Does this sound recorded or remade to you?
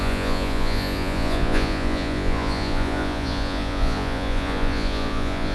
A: remade